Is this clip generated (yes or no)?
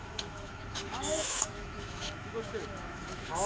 yes